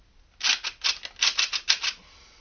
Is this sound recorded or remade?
recorded